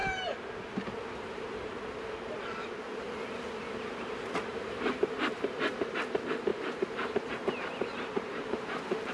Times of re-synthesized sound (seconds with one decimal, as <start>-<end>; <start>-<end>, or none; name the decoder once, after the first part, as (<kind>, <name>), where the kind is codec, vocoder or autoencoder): 0.0-2.4 (vocoder, BigVGAN v2); 4.5-6.0; 6.5-9.1